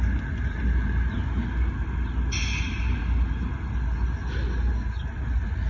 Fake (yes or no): no